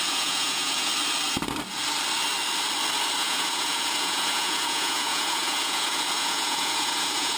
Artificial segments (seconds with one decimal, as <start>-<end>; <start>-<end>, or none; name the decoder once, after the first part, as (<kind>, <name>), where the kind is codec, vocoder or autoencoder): 0.0-0.9 (vocoder, Vocos); 3.2-7.4